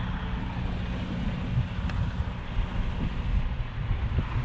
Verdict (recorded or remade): recorded